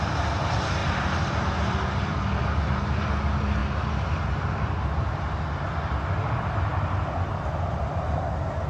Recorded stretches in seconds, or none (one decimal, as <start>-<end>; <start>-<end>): 3.6-4.5